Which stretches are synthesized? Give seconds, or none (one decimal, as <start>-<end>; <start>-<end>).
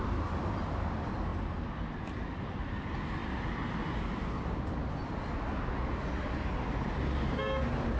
none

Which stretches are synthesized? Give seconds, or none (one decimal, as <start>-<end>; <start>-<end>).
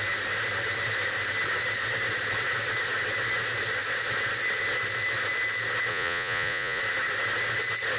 5.9-6.8